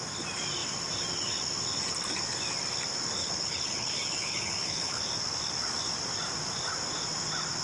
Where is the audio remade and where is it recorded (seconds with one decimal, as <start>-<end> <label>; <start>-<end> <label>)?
0.0-3.2 recorded; 3.2-5.0 remade; 5.0-7.6 recorded